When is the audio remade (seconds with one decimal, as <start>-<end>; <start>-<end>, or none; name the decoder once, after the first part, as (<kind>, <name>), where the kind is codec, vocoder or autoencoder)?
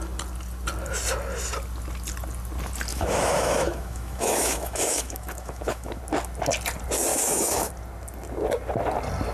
2.9-6.0 (autoencoder, DAC-VAE); 7.1-7.7